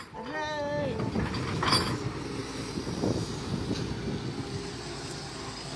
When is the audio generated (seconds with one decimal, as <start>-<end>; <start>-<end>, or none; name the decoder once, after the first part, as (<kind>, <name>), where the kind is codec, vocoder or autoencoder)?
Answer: none